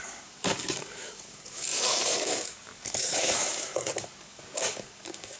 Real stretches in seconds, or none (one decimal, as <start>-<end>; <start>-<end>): none